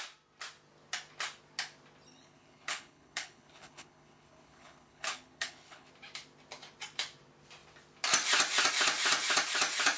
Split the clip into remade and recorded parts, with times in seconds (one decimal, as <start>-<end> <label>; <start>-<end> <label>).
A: 0.0-2.1 recorded; 2.1-5.9 remade; 5.9-10.0 recorded